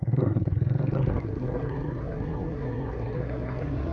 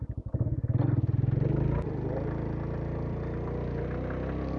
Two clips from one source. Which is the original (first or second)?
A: second